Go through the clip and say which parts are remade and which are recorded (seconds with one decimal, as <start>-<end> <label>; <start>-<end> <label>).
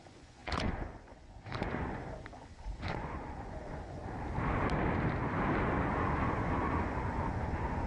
0.0-4.0 remade; 4.0-5.9 recorded; 5.9-7.9 remade